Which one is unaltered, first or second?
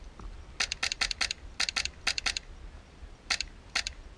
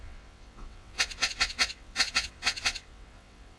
first